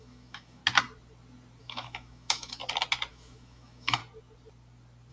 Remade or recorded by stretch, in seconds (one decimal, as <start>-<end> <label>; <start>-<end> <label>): 0.0-0.6 remade; 0.6-1.6 recorded; 1.6-2.6 remade; 2.6-3.1 recorded; 3.1-4.0 remade; 4.0-5.1 recorded